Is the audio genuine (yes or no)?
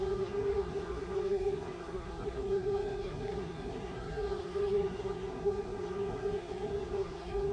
no